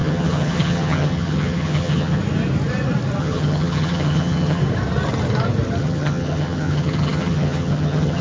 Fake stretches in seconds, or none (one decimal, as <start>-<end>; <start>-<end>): 0.0-2.2; 3.2-4.6; 5.8-8.2

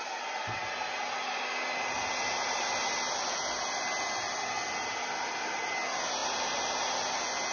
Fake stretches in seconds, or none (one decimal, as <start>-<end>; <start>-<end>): none

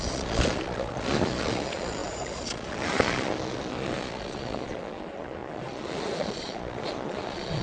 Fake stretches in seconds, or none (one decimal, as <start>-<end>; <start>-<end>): 0.0-7.6

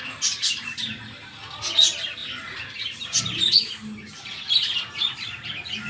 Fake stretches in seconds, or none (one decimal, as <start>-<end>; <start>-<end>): 2.2-3.2